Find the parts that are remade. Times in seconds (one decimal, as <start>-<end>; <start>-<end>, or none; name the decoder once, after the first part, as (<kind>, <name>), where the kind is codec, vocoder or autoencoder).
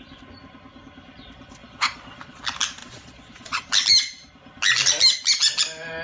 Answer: 1.6-2.4 (vocoder, Vocos); 2.8-3.6